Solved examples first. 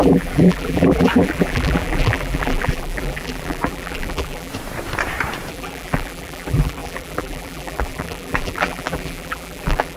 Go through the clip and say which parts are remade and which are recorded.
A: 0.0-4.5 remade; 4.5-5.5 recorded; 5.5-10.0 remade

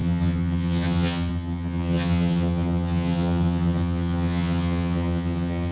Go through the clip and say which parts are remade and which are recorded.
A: 0.0-5.7 remade